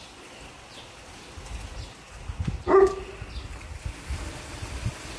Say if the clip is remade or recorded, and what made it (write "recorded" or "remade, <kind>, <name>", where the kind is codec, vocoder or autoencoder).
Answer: recorded